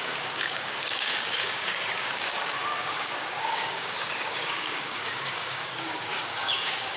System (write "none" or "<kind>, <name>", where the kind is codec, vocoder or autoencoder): codec, DAC